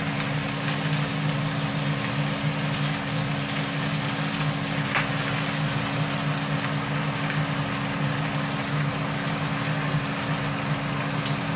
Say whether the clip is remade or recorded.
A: recorded